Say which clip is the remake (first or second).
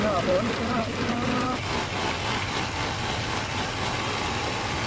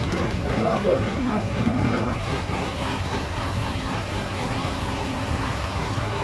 second